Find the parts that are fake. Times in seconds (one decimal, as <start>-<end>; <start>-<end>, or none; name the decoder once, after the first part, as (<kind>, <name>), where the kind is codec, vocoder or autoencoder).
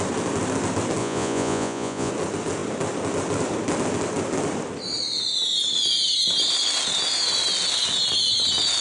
1.0-2.1 (vocoder, Vocos)